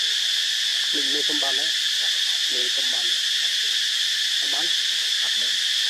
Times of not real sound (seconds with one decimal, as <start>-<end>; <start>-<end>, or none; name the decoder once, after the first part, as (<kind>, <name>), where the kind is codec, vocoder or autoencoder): 2.5-3.7 (vocoder, BigVGAN v2)